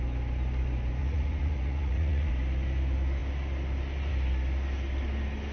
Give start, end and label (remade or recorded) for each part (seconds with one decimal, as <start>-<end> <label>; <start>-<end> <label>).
0.0-1.0 recorded; 1.0-2.3 remade; 2.3-5.5 recorded